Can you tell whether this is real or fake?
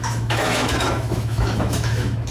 fake